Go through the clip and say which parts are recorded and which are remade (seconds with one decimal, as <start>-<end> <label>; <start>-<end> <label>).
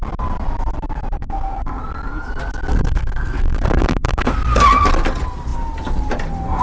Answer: 0.0-1.2 recorded; 1.2-1.8 remade; 1.8-2.7 recorded; 2.7-4.3 remade; 4.3-6.6 recorded